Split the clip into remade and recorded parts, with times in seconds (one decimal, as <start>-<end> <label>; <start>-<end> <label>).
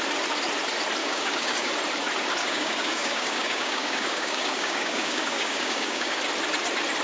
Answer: 0.0-1.0 recorded; 1.0-1.7 remade; 1.7-2.4 recorded; 2.4-6.2 remade; 6.2-7.0 recorded